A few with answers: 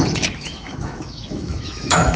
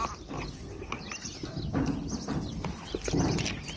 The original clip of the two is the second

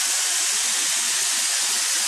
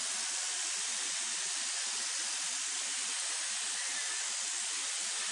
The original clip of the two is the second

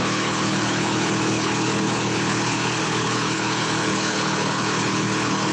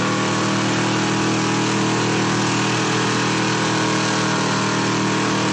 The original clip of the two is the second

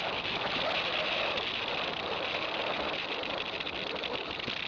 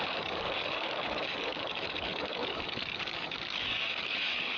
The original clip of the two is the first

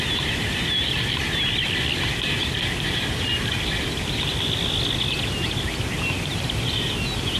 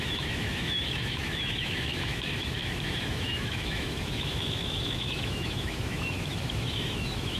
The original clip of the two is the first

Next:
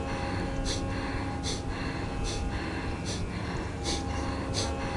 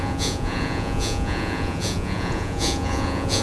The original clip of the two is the first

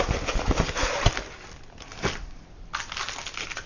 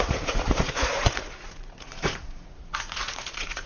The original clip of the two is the first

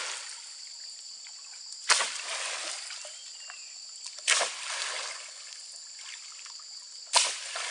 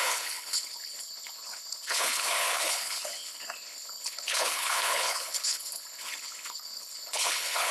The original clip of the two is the first